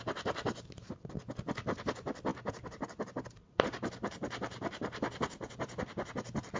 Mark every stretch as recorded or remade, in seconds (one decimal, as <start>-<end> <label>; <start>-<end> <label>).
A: 0.0-2.3 recorded; 2.3-5.8 remade; 5.8-6.6 recorded